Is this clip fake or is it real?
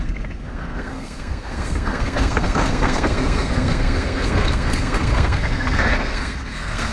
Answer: fake